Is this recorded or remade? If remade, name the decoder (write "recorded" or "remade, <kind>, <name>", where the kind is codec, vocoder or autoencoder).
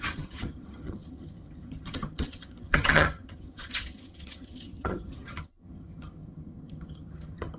remade, vocoder, HiFi-GAN